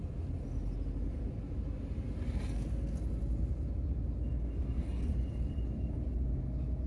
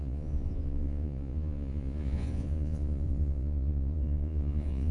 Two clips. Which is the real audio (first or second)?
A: first